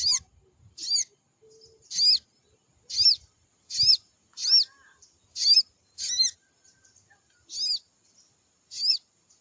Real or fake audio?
real